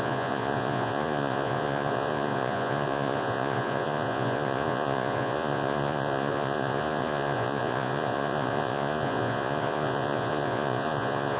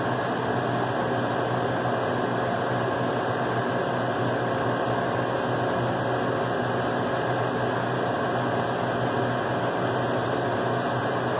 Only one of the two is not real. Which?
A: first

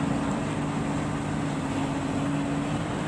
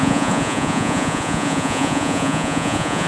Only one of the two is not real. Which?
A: second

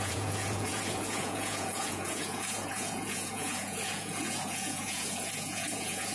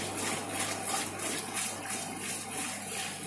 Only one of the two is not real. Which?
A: first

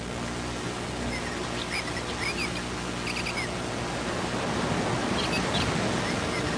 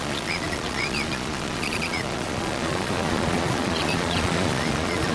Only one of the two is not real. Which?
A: second